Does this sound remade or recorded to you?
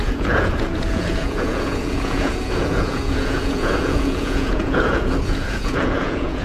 remade